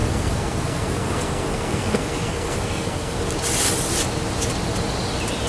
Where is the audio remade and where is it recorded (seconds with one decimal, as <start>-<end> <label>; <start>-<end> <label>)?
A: 0.0-3.2 remade; 3.2-5.5 recorded